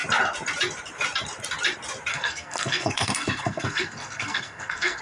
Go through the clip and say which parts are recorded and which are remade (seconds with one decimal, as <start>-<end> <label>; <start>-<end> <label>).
0.0-2.1 recorded; 2.1-5.0 remade